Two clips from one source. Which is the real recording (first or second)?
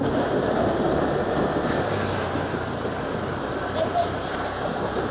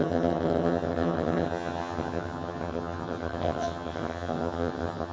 first